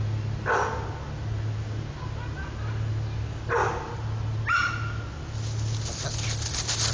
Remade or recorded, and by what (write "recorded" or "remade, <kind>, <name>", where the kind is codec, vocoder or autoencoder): recorded